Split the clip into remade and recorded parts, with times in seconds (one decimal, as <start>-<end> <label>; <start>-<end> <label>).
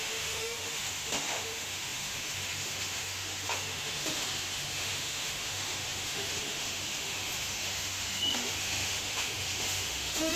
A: 0.0-10.4 remade